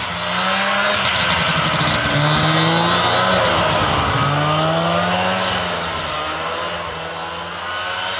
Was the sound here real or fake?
real